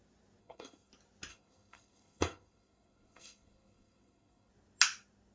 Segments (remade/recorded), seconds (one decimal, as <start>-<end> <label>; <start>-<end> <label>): 0.0-0.4 recorded; 0.4-0.9 remade; 0.9-1.3 recorded; 1.3-4.5 remade; 4.5-5.3 recorded